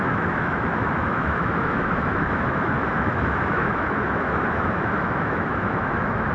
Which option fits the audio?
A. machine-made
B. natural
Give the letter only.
A